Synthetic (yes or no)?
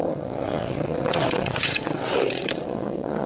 yes